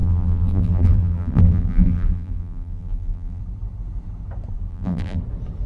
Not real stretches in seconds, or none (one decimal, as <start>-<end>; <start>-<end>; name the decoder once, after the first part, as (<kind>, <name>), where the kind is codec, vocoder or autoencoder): 0.0-3.4 (vocoder, BigVGAN v2); 4.7-5.2